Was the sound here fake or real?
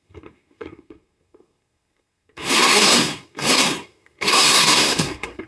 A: fake